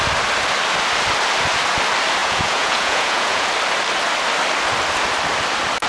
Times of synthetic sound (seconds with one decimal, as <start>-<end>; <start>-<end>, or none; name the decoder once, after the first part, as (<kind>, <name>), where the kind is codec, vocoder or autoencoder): 2.2-3.5 (vocoder, Vocos)